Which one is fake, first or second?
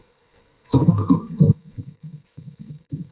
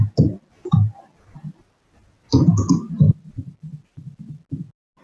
first